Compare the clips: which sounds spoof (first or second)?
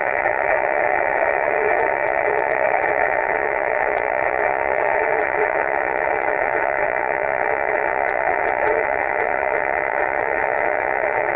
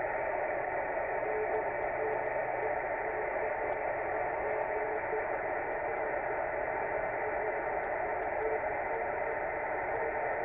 first